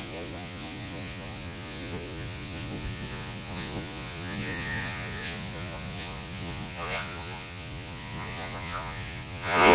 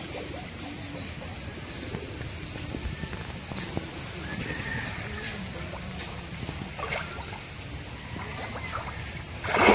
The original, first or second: second